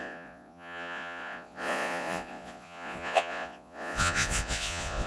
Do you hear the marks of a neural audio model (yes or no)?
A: yes